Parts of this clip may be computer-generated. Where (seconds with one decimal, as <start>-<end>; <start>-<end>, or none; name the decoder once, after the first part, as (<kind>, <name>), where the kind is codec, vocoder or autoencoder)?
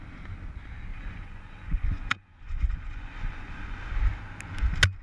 0.9-3.9 (vocoder, Vocos)